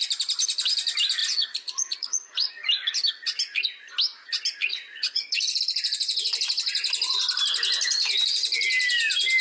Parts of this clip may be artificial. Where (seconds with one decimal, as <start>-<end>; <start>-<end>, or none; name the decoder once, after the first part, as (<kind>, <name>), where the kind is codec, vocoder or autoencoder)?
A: 1.2-2.5 (vocoder, Vocos); 4.7-5.6